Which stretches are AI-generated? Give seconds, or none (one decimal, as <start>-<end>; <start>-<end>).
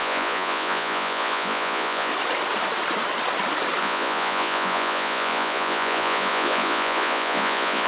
0.0-2.1; 3.8-7.9